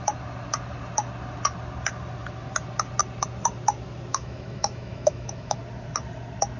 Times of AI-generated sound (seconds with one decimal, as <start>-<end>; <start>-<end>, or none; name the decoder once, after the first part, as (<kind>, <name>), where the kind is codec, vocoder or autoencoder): 4.1-5.6 (autoencoder, DAC-VAE)